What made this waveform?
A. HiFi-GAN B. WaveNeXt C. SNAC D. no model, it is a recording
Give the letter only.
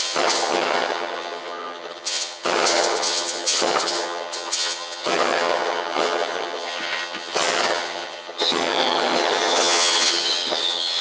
A